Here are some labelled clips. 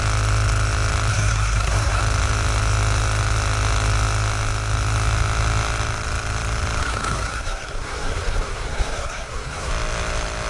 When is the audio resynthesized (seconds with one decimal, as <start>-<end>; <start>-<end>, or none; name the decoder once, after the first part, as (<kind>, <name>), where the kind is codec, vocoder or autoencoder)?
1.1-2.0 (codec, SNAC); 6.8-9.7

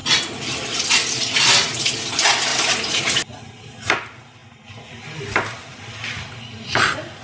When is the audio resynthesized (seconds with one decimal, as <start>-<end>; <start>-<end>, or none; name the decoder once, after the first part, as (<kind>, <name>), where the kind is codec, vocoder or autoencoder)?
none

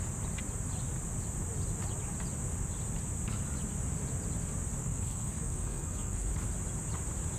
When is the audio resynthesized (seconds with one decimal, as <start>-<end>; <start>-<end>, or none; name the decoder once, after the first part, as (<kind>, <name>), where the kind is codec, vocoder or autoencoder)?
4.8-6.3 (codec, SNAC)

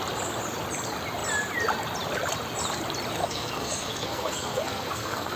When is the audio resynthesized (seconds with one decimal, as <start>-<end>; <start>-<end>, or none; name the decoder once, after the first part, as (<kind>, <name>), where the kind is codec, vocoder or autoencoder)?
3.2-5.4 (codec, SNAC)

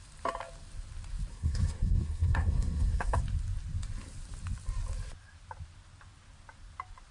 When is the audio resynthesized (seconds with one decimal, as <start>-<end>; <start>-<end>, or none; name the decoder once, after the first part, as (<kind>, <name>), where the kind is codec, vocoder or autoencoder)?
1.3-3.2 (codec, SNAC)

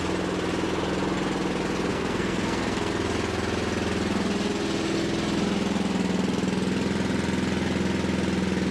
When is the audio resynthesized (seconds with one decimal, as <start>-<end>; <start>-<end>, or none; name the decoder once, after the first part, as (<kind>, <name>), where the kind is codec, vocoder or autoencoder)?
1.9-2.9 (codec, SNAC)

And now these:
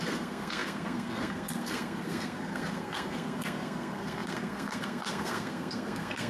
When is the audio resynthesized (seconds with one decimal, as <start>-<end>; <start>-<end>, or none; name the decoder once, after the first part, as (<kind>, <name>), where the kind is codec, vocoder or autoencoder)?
0.0-6.3 (codec, SNAC)

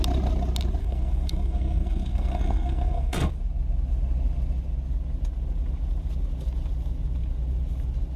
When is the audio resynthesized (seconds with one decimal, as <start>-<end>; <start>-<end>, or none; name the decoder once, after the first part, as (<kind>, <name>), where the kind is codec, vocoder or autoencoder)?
0.8-3.3 (codec, SNAC)